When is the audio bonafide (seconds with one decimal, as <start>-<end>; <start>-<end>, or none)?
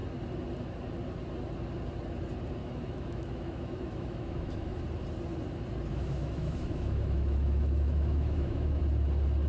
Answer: 0.0-2.6; 4.8-5.9; 8.8-9.5